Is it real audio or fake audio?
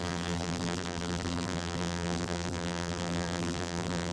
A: fake